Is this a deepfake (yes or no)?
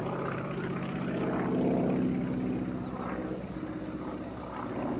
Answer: no